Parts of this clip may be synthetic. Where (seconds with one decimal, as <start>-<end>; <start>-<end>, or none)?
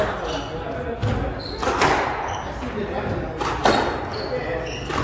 none